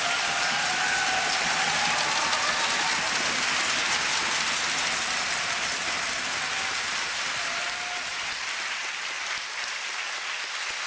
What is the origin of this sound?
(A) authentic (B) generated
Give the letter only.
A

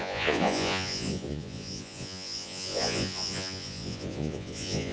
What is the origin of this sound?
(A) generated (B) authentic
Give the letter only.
A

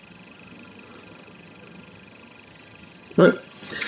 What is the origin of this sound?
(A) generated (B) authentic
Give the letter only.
A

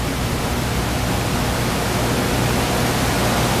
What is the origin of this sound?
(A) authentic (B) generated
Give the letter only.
A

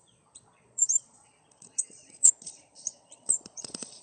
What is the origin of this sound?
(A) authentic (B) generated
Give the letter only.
B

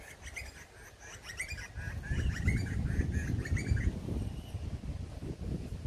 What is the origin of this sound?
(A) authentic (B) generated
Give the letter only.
A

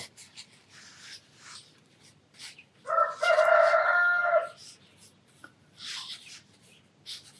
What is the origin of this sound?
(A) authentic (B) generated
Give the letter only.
A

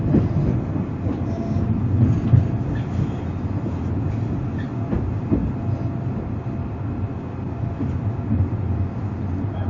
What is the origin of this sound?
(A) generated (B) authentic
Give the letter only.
B